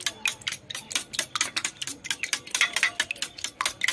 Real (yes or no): yes